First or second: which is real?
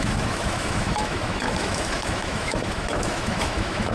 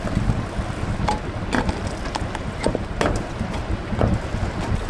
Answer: second